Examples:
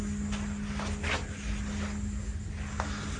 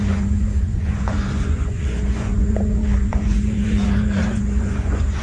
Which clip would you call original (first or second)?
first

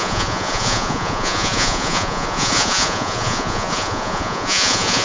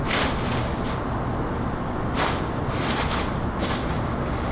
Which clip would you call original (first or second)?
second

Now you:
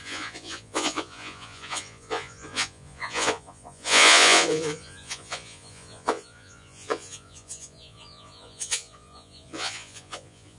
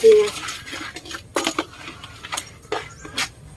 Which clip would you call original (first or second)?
second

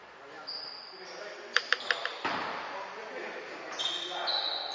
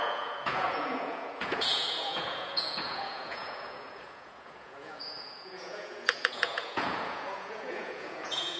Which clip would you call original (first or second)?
first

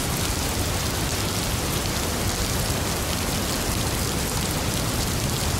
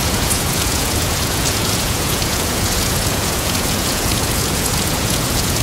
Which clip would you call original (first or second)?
first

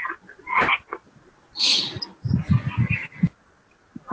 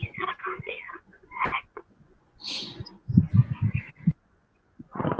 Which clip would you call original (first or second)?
first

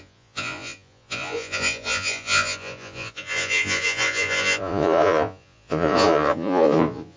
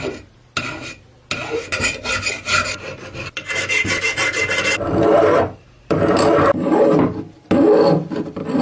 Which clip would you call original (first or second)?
second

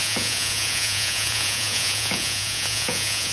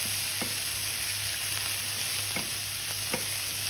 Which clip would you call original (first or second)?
second